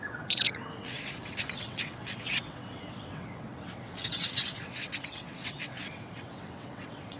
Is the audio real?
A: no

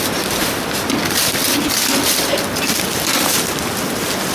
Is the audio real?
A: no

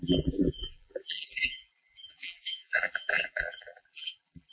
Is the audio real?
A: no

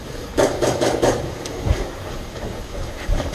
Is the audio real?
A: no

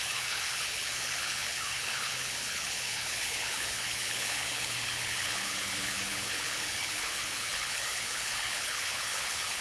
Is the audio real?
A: no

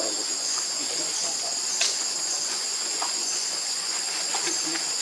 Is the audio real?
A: no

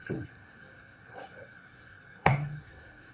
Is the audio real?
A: no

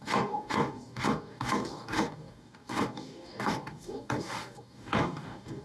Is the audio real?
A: no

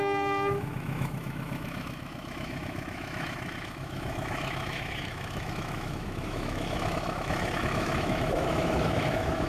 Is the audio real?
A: no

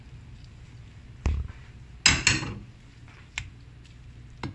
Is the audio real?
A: yes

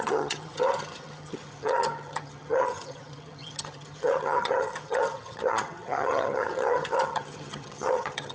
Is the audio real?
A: no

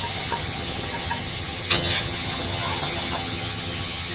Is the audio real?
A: no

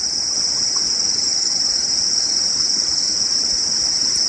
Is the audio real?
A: yes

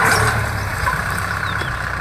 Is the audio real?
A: no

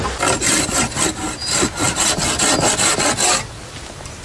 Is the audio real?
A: yes